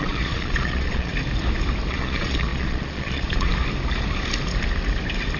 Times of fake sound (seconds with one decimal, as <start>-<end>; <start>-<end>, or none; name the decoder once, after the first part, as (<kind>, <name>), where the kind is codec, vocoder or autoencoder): 0.0-1.1 (vocoder, Vocos); 1.9-3.5